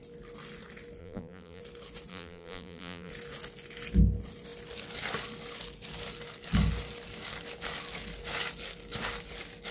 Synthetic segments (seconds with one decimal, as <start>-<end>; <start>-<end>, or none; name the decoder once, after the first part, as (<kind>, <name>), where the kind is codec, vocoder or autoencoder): 1.0-1.6 (vocoder, BigVGAN v2); 2.1-3.1